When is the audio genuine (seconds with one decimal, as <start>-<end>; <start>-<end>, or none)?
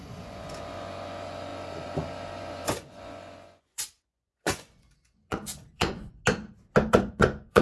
6.2-6.9